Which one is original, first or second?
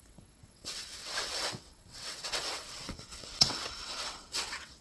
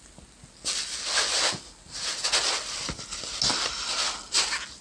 second